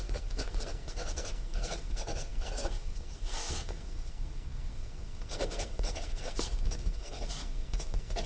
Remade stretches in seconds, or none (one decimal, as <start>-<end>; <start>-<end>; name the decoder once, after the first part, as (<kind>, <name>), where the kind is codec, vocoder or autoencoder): 0.0-8.3 (codec, SNAC)